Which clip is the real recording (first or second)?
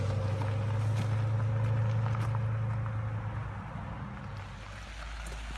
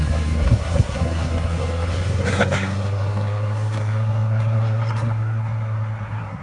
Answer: first